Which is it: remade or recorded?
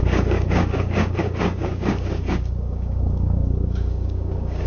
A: remade